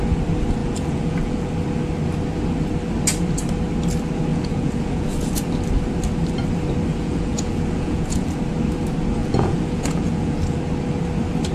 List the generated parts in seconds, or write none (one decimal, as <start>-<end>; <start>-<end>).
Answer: 0.6-1.5; 4.3-5.4; 6.9-8.4; 9.2-10.6